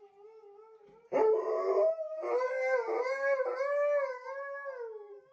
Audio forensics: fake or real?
real